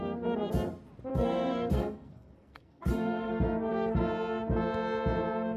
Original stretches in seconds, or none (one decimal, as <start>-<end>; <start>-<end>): 0.0-1.1; 3.3-5.6